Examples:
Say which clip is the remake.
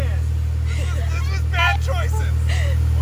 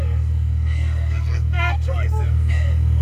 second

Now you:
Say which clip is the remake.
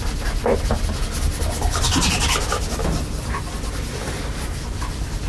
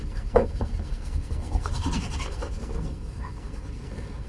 second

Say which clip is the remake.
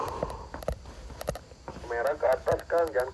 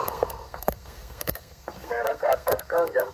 second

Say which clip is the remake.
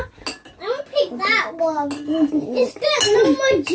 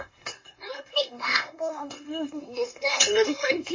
second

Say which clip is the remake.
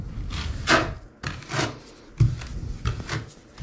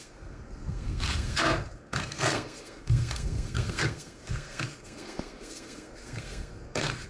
second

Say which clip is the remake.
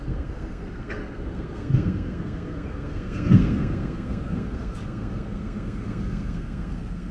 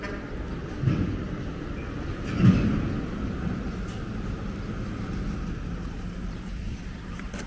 first